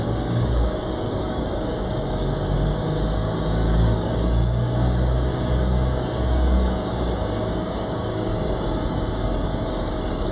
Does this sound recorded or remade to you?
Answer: remade